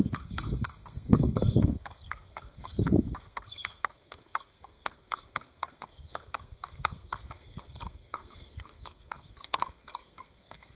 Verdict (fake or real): fake